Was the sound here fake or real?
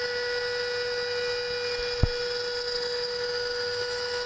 real